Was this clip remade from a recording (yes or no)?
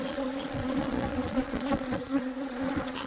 yes